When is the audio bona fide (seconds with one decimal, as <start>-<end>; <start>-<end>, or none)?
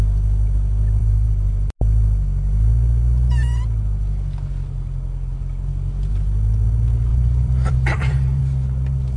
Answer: 0.0-1.0; 1.7-7.1; 8.4-9.2